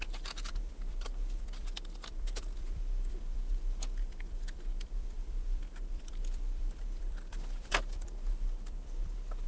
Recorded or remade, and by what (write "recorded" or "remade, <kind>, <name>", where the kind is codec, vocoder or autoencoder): remade, vocoder, BigVGAN v2